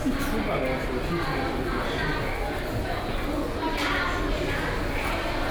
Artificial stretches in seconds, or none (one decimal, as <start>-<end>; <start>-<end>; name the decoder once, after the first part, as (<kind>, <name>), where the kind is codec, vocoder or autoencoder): none